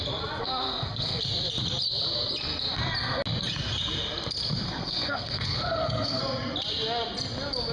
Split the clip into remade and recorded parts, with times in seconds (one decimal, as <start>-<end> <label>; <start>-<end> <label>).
0.0-0.4 recorded; 0.4-1.2 remade; 1.2-4.7 recorded; 4.7-6.2 remade; 6.2-7.7 recorded